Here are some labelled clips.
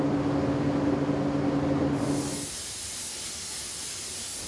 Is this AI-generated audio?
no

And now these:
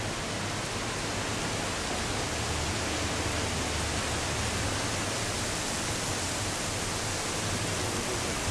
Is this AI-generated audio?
no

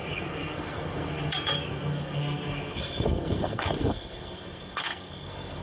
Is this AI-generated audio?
yes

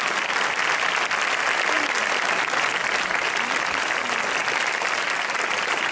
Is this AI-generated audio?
no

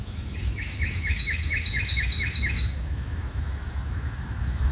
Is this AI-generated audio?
yes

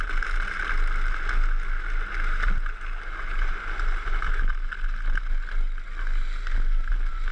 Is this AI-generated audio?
no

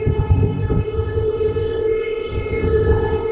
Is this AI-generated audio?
yes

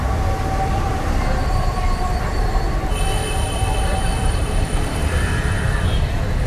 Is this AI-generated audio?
yes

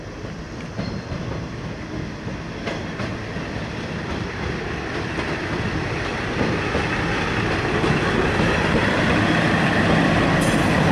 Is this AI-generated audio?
no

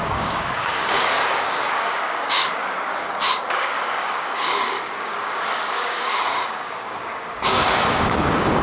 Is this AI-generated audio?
yes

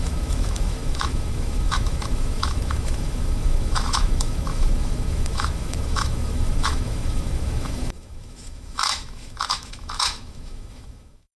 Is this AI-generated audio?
yes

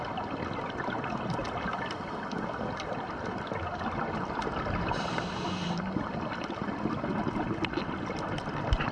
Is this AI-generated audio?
no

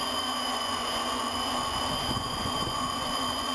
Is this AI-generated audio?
yes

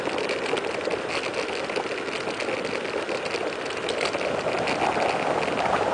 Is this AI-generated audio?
no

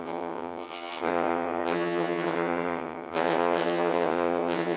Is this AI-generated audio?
yes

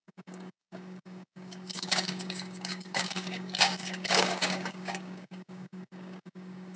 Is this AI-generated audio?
yes